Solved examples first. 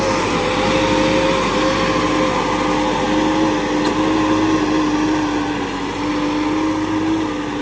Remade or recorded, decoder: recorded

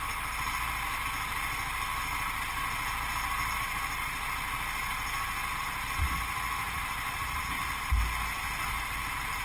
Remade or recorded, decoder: recorded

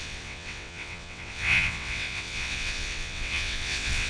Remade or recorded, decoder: remade, vocoder, WaveNeXt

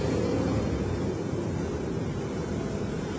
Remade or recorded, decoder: remade, vocoder, BigVGAN v2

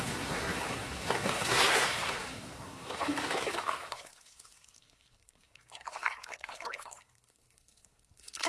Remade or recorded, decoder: remade, codec, SNAC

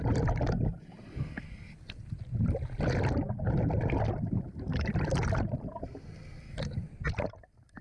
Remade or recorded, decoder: recorded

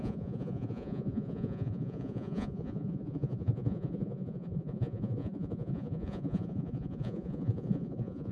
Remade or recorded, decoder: remade, vocoder, Vocos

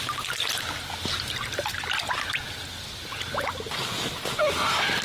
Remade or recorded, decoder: recorded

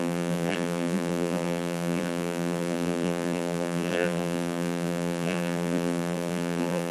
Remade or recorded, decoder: remade, vocoder, BigVGAN v2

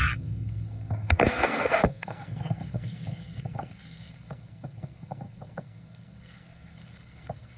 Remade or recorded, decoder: remade, codec, SNAC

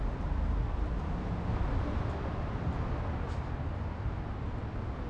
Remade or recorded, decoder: recorded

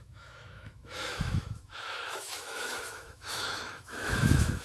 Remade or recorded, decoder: remade, autoencoder, DAC-VAE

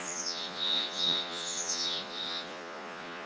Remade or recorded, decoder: remade, vocoder, Vocos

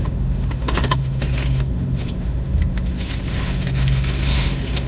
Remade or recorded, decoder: remade, autoencoder, DAC-VAE